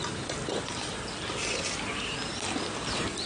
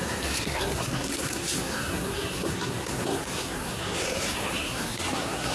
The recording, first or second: first